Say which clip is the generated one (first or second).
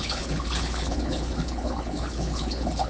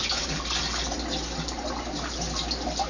first